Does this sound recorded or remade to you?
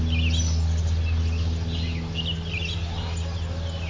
recorded